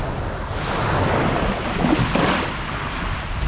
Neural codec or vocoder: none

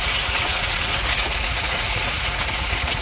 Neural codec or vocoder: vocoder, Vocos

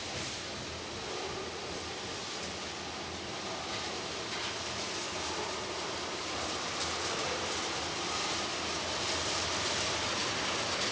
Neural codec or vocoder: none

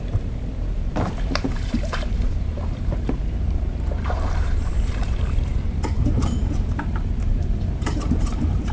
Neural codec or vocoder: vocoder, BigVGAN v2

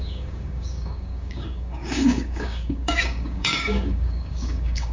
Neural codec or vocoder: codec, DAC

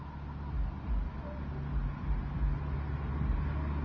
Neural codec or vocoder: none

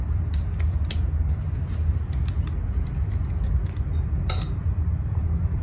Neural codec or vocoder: none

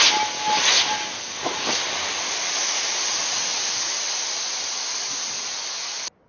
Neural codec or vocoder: none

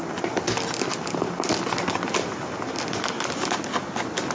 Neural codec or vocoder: none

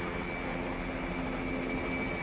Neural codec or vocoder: none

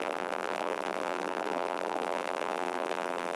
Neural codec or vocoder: vocoder, BigVGAN v2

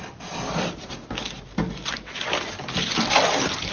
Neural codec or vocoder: none